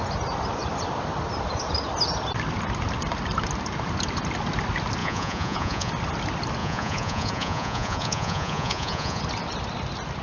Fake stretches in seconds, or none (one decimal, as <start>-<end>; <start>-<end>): 5.0-5.9; 6.6-9.2